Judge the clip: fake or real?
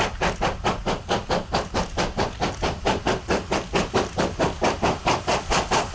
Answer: real